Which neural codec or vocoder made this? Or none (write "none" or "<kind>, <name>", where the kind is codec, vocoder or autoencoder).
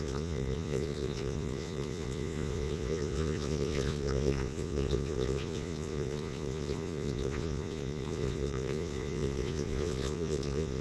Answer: vocoder, Vocos